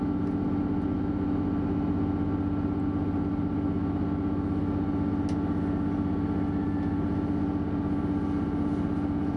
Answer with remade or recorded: recorded